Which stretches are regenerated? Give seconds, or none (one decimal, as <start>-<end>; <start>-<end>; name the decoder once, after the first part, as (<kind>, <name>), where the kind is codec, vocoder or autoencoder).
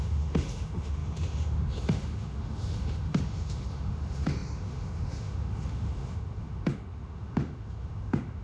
0.0-8.4 (autoencoder, DAC-VAE)